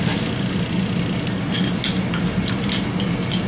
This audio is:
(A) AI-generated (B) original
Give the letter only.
B